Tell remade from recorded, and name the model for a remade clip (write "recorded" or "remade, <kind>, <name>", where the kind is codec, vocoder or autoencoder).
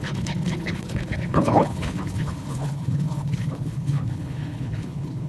remade, codec, HILCodec